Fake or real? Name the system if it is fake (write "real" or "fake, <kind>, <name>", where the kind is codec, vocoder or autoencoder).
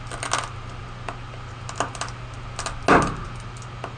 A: real